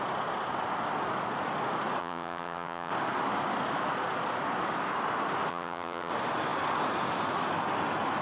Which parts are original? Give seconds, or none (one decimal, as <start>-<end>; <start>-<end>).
0.0-2.0; 2.9-5.5; 6.1-8.2

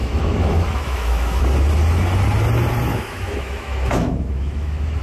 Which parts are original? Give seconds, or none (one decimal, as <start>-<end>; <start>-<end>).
1.4-2.9

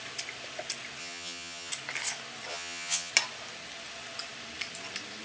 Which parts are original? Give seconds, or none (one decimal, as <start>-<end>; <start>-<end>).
0.0-1.0; 1.7-2.5; 3.1-5.2

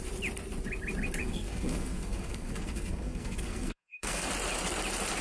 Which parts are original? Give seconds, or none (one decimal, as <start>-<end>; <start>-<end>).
0.0-1.2; 4.3-5.2

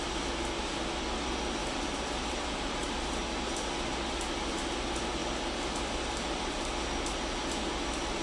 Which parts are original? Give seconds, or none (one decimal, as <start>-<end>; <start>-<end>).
0.0-1.6; 3.0-8.2

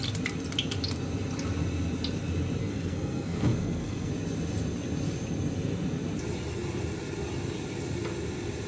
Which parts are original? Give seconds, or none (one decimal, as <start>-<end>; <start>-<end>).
0.0-2.6; 4.1-8.7